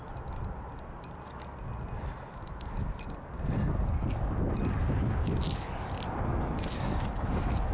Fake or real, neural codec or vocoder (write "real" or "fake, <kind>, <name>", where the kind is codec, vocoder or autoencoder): real